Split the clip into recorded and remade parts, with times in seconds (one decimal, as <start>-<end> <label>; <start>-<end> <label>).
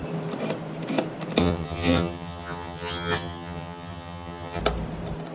0.0-1.4 recorded; 1.4-4.6 remade; 4.6-5.3 recorded